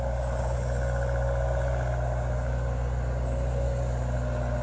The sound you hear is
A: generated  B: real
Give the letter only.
B